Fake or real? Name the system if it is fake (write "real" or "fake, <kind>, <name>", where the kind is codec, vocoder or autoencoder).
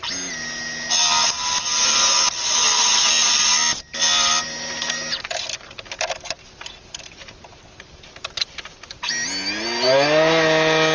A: real